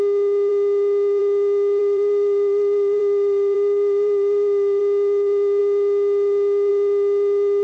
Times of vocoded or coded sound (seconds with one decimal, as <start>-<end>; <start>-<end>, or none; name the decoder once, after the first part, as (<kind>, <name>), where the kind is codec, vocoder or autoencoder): 1.8-4.8 (vocoder, BigVGAN v2)